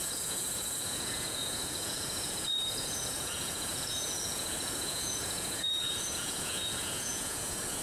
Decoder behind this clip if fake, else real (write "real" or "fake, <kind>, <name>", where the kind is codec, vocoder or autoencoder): fake, vocoder, Vocos